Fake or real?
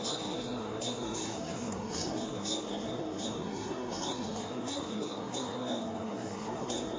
fake